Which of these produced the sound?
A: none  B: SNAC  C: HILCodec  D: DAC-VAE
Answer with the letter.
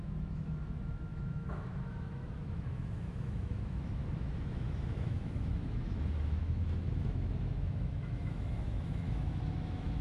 D